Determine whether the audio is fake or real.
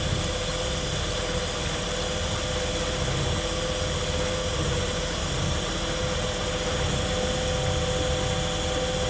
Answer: real